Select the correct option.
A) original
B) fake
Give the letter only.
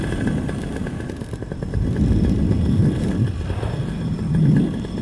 A